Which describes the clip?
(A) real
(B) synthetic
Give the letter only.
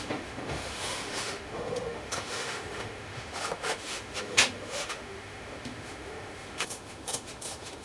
B